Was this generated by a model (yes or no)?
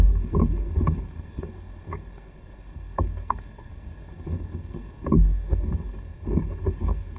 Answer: yes